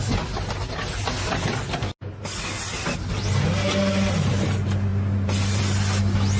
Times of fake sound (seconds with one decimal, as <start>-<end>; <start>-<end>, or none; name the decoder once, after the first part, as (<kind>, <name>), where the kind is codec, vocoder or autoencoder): none